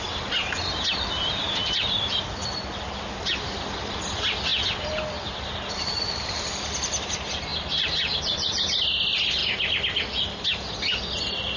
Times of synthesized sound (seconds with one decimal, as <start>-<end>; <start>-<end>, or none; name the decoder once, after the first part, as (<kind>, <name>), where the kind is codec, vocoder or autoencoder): 1.6-2.2 (vocoder, BigVGAN v2); 7.5-8.2